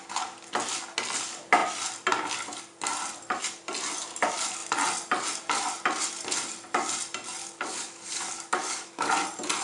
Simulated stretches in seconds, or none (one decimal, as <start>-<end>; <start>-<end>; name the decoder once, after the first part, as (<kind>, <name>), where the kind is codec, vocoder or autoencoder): 7.4-9.1 (codec, DAC)